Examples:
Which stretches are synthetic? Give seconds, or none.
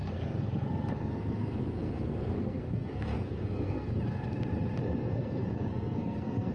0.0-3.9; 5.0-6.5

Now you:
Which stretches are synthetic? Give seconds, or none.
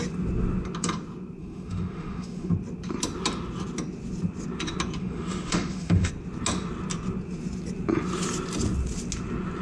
1.4-2.5; 5.0-6.1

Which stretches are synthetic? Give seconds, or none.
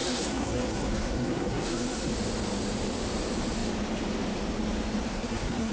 0.0-2.1; 5.1-5.7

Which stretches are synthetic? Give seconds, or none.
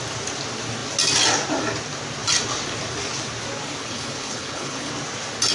3.8-4.9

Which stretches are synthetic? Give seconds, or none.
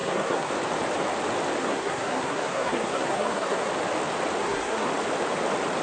0.0-0.5; 1.6-3.7; 4.4-4.9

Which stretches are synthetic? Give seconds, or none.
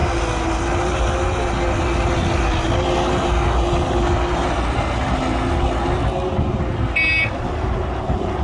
none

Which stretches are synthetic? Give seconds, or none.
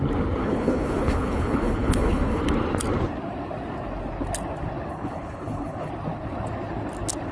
0.4-2.4; 4.9-5.9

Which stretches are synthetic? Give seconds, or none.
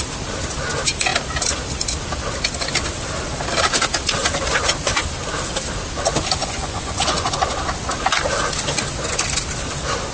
6.4-7.3